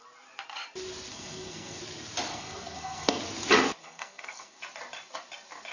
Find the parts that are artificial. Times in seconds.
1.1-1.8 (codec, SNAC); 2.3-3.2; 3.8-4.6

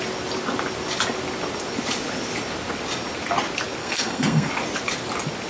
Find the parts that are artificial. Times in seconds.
3.8-4.5 (codec, SNAC)

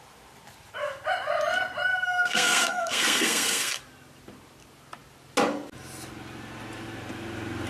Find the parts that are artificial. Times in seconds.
1.9-3.8 (codec, SNAC)